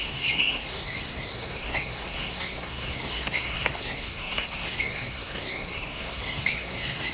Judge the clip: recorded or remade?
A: remade